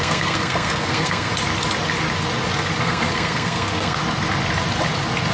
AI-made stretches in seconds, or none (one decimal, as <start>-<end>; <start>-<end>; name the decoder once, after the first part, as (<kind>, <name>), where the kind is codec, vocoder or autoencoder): 0.0-1.3 (codec, SNAC); 2.8-4.0